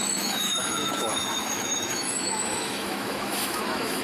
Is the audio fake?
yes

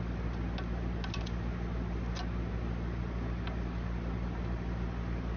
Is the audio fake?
no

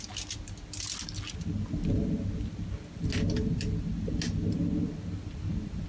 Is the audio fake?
no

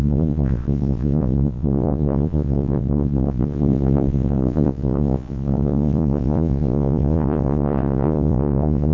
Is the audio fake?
yes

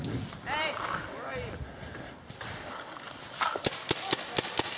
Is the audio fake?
no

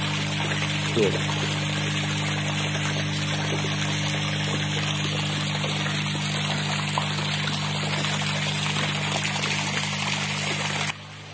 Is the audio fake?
no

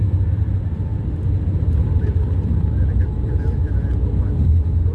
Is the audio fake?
yes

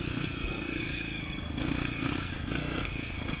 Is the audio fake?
yes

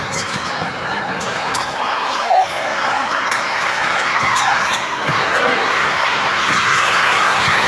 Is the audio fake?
yes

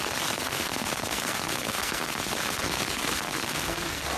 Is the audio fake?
yes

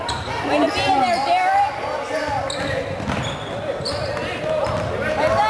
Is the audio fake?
no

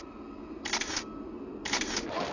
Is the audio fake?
no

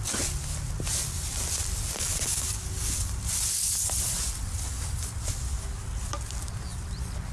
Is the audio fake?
no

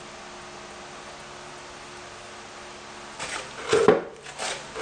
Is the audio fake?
no